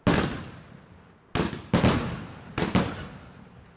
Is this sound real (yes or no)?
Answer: yes